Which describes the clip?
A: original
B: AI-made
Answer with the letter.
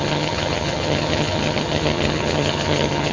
B